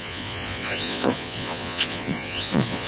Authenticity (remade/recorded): remade